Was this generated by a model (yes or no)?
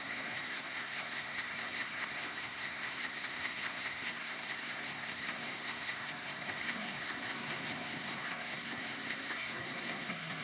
yes